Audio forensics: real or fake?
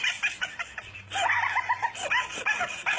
real